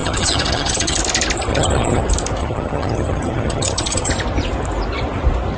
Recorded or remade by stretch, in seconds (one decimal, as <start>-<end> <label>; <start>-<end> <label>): 0.0-1.0 remade; 1.0-1.5 recorded; 1.5-2.0 remade; 2.0-2.4 recorded; 2.4-4.1 remade; 4.1-5.6 recorded